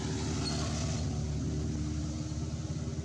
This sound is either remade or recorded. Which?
recorded